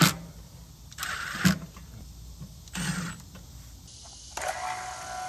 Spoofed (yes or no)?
no